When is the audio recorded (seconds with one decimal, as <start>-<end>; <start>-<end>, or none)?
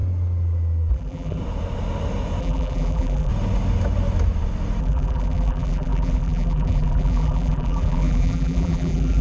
0.0-0.9; 1.4-2.4; 3.3-4.8